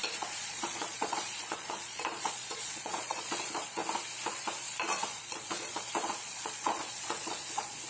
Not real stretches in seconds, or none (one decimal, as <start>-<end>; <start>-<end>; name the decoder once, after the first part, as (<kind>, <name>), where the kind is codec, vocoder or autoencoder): 0.0-3.8 (vocoder, Vocos); 4.3-7.9